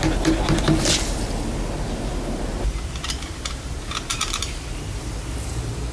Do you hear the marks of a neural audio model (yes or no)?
yes